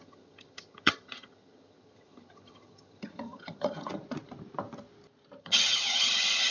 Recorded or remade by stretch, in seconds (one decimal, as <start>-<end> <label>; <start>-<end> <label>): 0.0-3.9 remade; 3.9-5.4 recorded; 5.4-6.5 remade